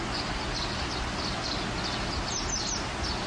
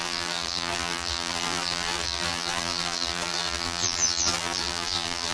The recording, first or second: first